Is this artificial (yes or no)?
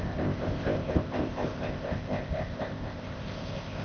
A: yes